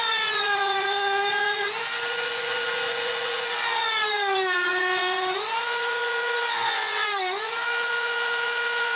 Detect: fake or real fake